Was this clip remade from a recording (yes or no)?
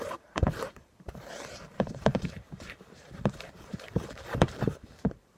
yes